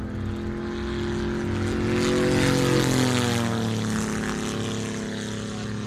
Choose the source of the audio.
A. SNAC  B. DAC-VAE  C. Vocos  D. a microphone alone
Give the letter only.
D